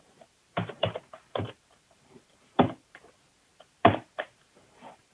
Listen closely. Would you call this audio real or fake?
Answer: fake